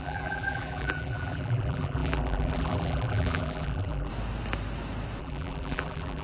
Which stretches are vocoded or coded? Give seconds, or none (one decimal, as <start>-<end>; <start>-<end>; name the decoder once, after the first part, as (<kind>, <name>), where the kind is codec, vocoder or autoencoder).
0.0-4.1 (vocoder, BigVGAN v2); 5.2-6.2